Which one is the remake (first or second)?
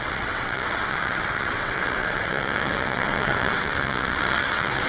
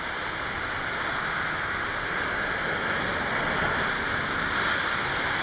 first